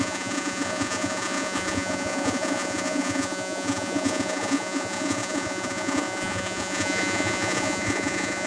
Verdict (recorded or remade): remade